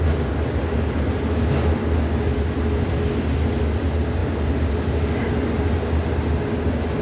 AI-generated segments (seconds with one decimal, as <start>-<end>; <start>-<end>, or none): none